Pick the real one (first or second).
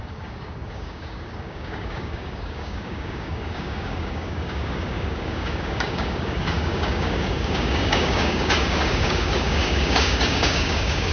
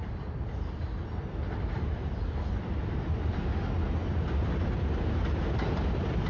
second